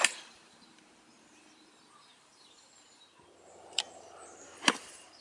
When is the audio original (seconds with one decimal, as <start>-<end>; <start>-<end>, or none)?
none